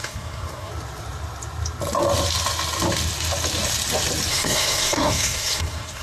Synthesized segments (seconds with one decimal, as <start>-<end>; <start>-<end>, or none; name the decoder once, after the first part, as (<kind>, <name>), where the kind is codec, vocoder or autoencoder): 0.0-0.7 (codec, SNAC); 4.3-6.0

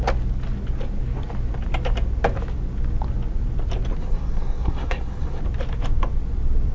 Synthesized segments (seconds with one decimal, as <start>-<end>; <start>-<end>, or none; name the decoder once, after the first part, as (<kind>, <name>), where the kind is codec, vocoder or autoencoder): 4.0-5.4 (codec, SNAC)

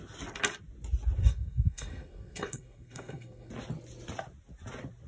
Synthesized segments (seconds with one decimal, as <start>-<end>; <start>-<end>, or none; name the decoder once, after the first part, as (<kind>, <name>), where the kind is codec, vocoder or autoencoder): 1.2-3.5 (codec, SNAC)

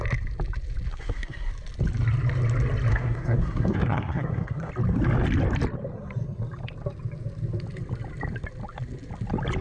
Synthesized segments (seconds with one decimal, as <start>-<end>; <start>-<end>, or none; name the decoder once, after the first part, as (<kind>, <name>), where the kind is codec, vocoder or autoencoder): 0.9-1.5 (codec, SNAC); 2.9-4.7

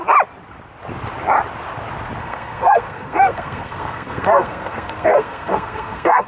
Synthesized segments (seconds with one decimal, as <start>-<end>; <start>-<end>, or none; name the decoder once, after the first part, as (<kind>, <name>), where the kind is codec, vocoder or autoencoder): 2.2-6.3 (codec, SNAC)

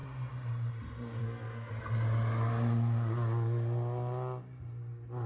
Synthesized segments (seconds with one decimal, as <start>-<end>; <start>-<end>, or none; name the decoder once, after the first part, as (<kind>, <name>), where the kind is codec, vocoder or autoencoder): 1.2-1.7 (codec, SNAC)

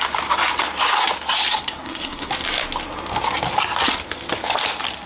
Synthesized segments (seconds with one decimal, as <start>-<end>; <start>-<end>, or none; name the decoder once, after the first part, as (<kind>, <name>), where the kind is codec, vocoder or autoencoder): 1.5-2.3 (codec, SNAC)

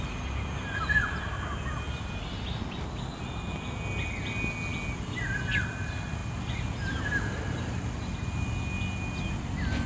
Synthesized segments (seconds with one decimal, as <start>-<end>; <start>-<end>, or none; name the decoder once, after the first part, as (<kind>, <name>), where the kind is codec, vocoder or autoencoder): none